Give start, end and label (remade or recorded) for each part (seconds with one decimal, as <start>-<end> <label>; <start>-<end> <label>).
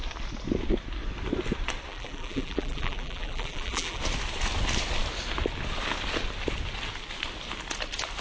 0.0-1.9 recorded; 1.9-4.0 remade; 4.0-8.2 recorded